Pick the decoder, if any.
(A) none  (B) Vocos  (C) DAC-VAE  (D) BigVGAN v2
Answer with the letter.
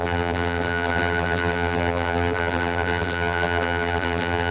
D